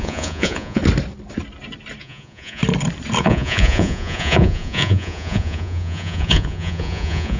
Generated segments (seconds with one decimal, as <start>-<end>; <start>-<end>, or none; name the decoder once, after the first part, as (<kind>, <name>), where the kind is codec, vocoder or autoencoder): 0.0-0.8 (vocoder, Vocos); 2.0-2.6; 3.2-7.4

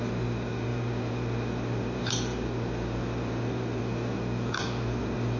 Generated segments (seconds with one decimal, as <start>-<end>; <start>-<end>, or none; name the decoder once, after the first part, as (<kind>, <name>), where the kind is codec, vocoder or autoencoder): none

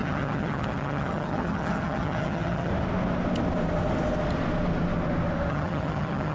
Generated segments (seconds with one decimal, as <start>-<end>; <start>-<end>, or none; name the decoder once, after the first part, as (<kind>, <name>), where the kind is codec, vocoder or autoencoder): 0.0-2.7 (vocoder, HiFi-GAN); 5.5-6.3

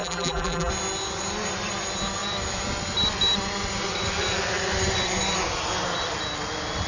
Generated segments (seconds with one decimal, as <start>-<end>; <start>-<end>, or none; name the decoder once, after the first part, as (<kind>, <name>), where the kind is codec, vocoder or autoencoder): 0.0-0.7 (vocoder, BigVGAN v2)

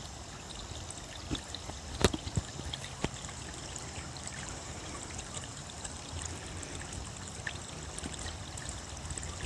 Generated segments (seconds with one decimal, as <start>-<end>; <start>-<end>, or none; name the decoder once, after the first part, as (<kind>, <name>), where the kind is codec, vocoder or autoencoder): 2.0-6.2 (vocoder, BigVGAN v2)

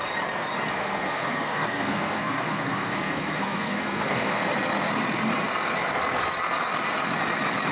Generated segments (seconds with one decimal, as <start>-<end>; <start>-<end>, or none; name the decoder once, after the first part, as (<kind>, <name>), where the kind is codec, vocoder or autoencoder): 0.7-4.4 (codec, SNAC)

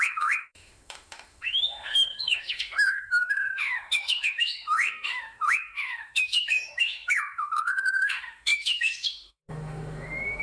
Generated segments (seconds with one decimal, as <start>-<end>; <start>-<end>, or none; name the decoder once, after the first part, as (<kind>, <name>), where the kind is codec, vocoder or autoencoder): 0.0-10.4 (autoencoder, DAC-VAE)

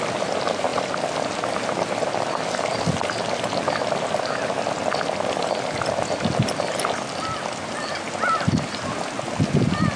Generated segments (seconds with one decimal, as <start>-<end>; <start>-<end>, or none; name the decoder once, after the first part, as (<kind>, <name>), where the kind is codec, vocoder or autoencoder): none